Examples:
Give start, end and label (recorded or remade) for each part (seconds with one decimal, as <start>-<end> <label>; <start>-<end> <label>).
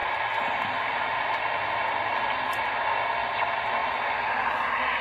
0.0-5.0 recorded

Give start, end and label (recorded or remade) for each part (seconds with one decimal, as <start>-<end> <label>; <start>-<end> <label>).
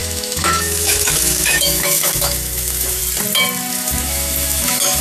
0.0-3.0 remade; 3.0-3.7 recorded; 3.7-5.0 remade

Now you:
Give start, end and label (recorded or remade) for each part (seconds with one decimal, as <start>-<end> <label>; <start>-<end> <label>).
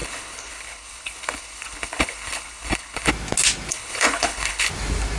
0.0-3.1 remade; 3.1-3.7 recorded; 3.7-4.7 remade; 4.7-5.2 recorded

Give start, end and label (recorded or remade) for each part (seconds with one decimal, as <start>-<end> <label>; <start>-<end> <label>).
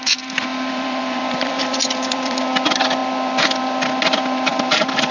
0.0-0.5 recorded; 0.5-2.4 remade; 2.4-4.5 recorded; 4.5-5.1 remade